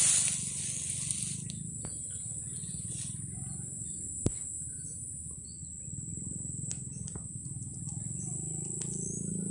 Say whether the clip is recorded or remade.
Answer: recorded